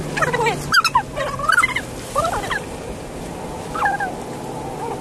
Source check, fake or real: real